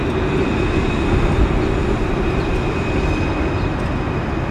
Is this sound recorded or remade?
recorded